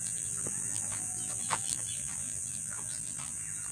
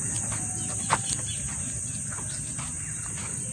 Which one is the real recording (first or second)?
second